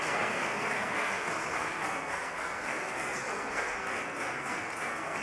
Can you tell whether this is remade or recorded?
remade